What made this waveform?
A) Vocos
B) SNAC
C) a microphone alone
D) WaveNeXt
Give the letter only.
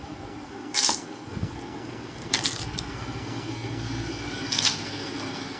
B